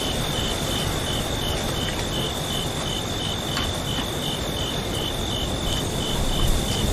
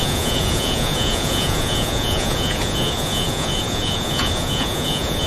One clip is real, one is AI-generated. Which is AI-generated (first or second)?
second